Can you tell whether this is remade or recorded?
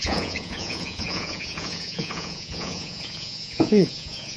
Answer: remade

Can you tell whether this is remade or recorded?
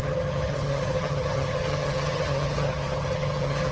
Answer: remade